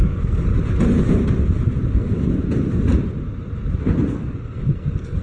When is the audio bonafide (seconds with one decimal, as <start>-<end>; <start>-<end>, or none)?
0.5-1.9; 2.3-3.8